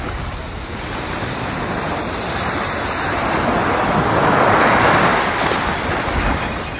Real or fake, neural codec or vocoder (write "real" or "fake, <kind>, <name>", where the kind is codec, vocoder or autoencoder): real